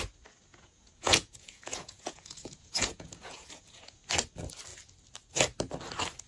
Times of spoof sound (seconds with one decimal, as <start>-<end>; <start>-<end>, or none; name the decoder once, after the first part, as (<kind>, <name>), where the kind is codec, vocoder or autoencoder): 0.5-4.0 (vocoder, Vocos)